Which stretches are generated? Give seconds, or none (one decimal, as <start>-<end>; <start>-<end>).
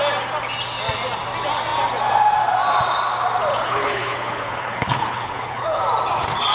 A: 3.5-5.8